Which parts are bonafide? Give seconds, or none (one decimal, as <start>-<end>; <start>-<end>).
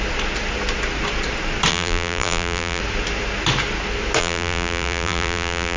0.0-1.7; 2.8-4.2